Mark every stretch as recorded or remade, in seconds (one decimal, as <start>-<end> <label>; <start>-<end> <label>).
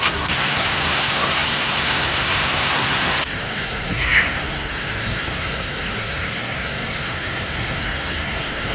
0.0-8.7 remade